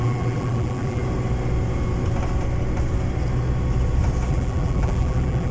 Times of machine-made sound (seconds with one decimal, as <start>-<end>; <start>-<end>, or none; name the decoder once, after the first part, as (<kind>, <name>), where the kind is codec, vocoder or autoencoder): 0.0-1.0 (vocoder, BigVGAN v2); 4.3-5.5